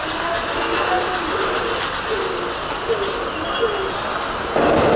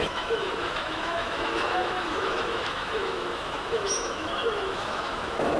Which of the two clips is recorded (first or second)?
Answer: first